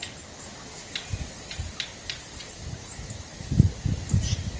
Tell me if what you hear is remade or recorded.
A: recorded